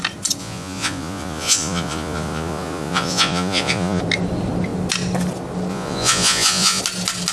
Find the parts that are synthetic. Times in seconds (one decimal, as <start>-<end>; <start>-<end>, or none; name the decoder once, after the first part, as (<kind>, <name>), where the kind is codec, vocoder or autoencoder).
0.4-4.0 (vocoder, Vocos); 5.7-6.8